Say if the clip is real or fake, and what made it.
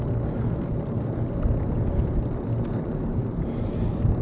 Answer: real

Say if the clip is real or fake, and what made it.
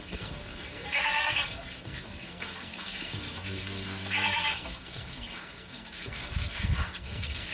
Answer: fake, codec, SNAC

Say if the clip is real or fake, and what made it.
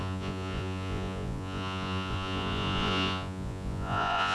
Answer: fake, vocoder, Vocos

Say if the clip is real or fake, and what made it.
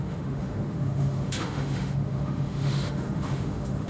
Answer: fake, autoencoder, DAC-VAE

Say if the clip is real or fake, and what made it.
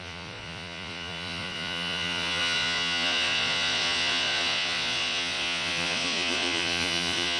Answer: fake, vocoder, Vocos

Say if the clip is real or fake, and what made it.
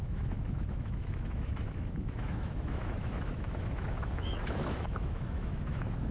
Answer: fake, autoencoder, DAC-VAE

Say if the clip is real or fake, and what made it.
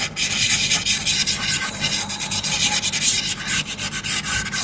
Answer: real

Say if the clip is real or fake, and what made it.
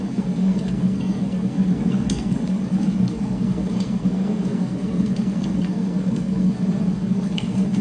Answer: fake, codec, SNAC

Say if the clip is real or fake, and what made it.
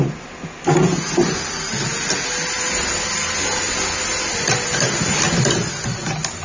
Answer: real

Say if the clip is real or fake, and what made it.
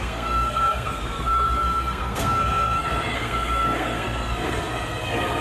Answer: fake, codec, SNAC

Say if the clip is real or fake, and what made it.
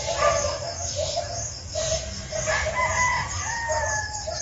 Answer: real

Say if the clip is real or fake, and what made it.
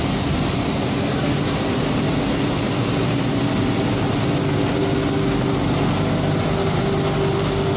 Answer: real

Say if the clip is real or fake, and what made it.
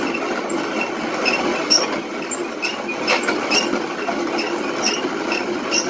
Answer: real